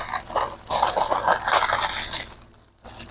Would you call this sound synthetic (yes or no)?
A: no